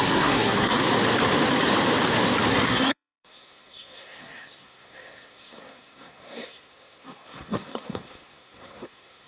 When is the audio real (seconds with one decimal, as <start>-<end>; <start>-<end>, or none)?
0.8-2.5